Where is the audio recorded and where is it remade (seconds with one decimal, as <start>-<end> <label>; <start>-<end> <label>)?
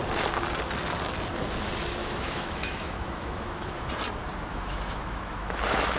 0.0-2.0 recorded; 2.0-3.9 remade; 3.9-4.5 recorded; 4.5-6.0 remade